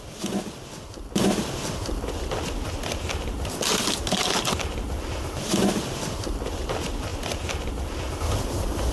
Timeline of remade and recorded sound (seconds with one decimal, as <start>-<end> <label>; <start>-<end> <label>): 0.0-8.9 recorded